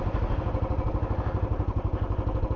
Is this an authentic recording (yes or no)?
yes